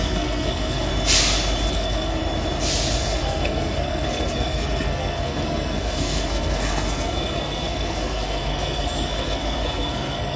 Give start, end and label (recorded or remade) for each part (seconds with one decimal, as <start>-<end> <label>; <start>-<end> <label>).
0.0-0.9 remade; 0.9-1.7 recorded; 1.7-2.2 remade; 2.2-3.0 recorded; 3.0-10.4 remade